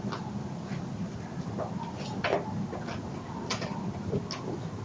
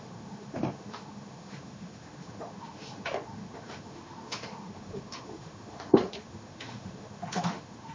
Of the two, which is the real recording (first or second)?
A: first